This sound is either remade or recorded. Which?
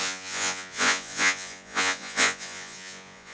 remade